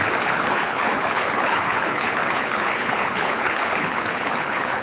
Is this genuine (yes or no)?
no